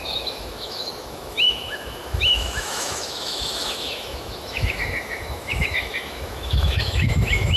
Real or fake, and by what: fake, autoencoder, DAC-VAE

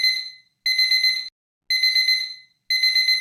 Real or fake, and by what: real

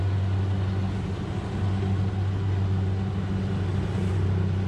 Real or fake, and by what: real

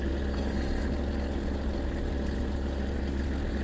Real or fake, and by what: real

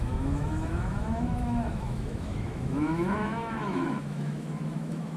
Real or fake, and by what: fake, autoencoder, DAC-VAE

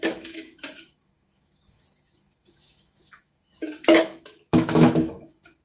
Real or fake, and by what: fake, autoencoder, DAC-VAE